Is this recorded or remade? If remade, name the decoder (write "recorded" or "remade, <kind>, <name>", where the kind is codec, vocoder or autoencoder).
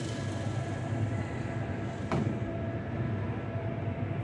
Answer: recorded